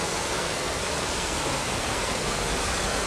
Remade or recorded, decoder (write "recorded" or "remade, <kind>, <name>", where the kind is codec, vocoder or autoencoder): remade, codec, SNAC